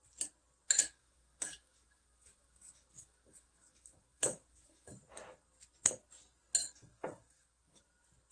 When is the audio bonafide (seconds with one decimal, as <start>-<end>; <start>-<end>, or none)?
0.0-0.8; 4.9-6.6; 7.8-8.3